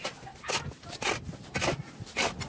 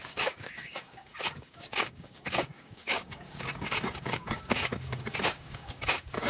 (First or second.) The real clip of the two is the first